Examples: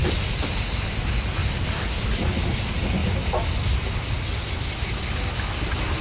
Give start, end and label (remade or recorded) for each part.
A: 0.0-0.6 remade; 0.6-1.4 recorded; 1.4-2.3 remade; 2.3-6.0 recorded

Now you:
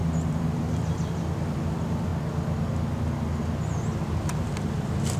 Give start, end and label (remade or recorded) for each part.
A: 0.0-2.1 remade; 2.1-4.2 recorded; 4.2-5.2 remade

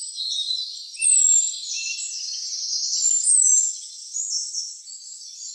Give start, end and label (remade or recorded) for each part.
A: 0.0-0.7 recorded; 0.7-3.7 remade; 3.7-5.5 recorded

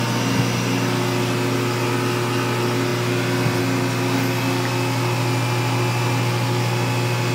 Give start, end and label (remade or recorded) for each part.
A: 0.0-2.9 recorded; 2.9-3.6 remade; 3.6-7.3 recorded

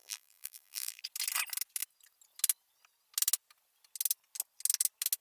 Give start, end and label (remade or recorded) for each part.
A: 0.0-1.0 remade; 1.0-5.2 recorded

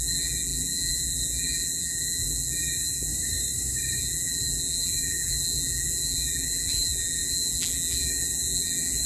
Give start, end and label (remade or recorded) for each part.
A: 0.0-3.1 remade; 3.1-4.0 recorded; 4.0-9.1 remade

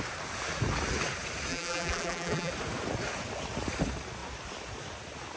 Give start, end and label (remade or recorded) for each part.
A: 0.0-1.5 recorded; 1.5-2.5 remade; 2.5-5.4 recorded